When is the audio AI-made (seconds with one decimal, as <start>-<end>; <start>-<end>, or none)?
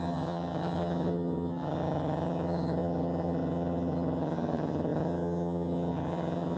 0.0-6.6